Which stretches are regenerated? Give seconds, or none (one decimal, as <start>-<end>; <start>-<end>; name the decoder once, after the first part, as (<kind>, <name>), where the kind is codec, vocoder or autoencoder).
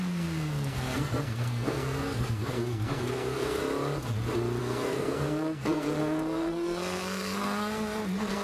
0.0-3.6 (codec, SNAC); 4.6-8.4